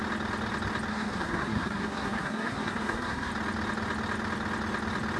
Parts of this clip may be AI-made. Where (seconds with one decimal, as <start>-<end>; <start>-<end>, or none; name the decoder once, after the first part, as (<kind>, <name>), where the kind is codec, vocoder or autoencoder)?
0.9-3.3 (codec, SNAC)